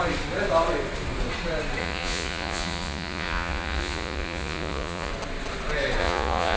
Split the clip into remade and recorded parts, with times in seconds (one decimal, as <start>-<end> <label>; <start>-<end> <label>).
0.0-1.8 recorded; 1.8-5.1 remade; 5.1-6.0 recorded; 6.0-6.6 remade